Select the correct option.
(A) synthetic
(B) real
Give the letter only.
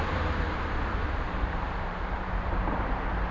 A